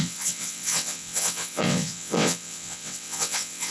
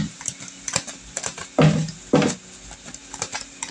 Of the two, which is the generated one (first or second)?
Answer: first